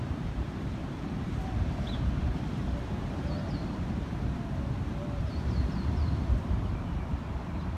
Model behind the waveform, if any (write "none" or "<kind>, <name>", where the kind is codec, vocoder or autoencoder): vocoder, BigVGAN v2